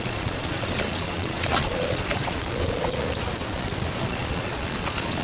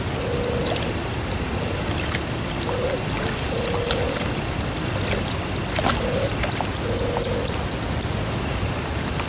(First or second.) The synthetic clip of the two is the first